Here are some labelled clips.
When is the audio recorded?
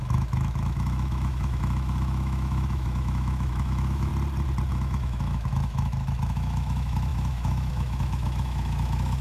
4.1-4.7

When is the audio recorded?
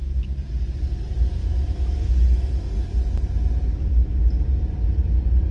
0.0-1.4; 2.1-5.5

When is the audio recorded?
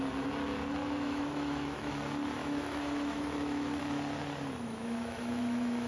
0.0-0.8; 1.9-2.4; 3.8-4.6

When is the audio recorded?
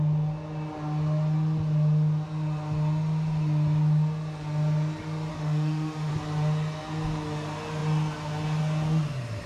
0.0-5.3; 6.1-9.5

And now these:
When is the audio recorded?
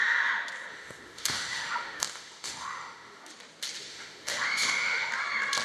0.0-0.7; 3.3-3.9; 5.1-5.6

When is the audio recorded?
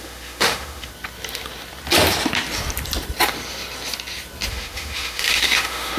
0.9-4.5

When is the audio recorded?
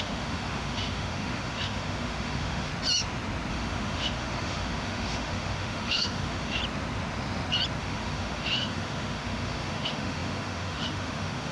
2.7-3.5; 6.6-7.8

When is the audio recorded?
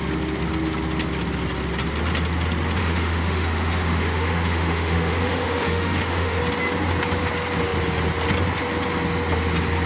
0.0-2.8; 6.4-9.9